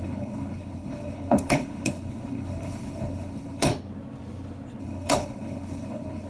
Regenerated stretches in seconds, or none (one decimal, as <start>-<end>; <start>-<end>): 0.0-3.7; 4.8-6.3